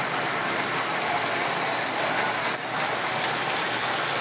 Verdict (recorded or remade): remade